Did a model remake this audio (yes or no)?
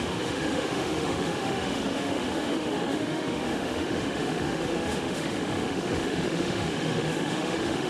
yes